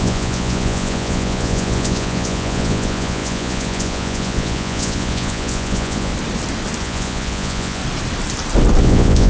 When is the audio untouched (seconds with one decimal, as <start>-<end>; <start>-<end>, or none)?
6.1-6.8; 7.8-8.8